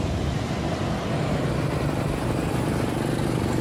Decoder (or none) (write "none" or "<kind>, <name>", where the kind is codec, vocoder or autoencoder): none